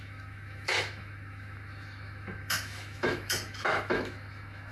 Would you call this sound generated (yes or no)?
yes